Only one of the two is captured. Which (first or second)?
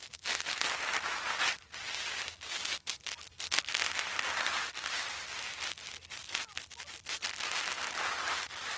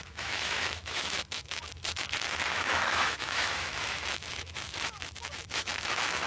first